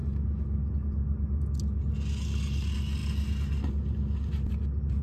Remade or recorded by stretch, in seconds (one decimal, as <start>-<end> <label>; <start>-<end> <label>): 0.0-5.0 recorded